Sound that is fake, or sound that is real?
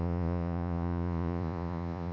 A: fake